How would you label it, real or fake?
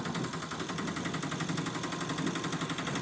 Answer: real